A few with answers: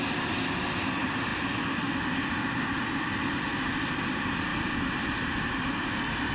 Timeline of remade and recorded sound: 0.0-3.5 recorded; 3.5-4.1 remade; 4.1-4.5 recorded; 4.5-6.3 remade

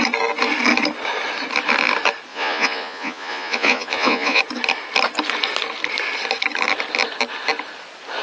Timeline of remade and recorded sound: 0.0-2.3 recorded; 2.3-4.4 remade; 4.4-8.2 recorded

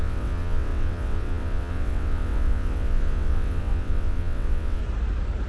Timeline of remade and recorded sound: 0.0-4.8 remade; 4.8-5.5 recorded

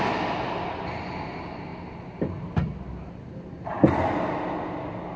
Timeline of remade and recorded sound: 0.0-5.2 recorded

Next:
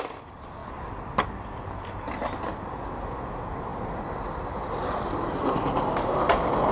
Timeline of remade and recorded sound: 0.0-6.7 recorded

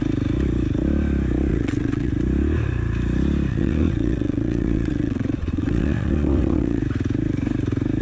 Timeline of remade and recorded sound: 0.0-1.5 recorded; 1.5-2.1 remade; 2.1-3.5 recorded; 3.5-6.8 remade; 6.8-8.0 recorded